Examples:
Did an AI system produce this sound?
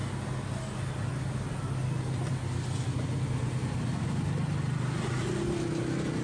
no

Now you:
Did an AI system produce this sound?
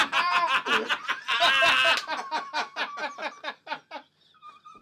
no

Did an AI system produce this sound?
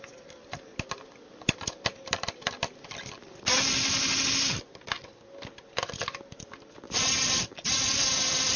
no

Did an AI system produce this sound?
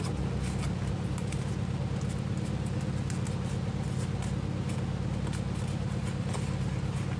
no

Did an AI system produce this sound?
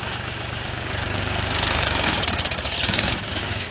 yes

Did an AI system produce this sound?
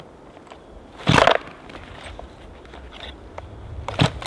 no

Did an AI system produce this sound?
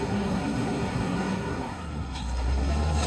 yes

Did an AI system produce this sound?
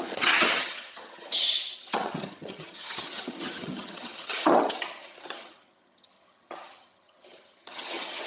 yes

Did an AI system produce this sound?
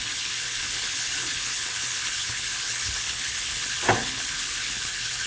yes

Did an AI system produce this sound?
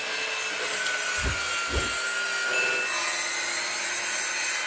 no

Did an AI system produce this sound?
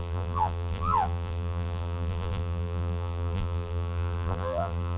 yes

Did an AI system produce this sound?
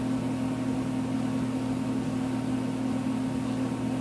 no